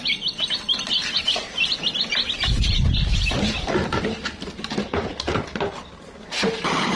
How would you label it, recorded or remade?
recorded